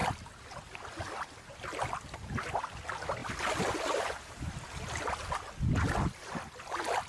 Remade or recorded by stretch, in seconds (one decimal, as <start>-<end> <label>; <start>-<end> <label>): 0.0-7.1 recorded